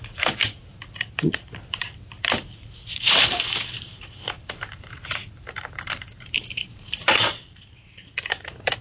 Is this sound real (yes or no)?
no